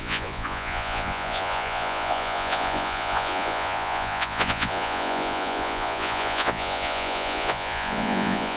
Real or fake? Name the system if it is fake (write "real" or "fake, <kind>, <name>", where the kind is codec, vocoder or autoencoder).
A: fake, vocoder, Vocos